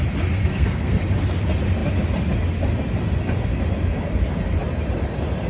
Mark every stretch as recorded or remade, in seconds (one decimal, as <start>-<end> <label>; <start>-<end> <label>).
0.0-0.4 recorded; 0.4-1.0 remade; 1.0-5.5 recorded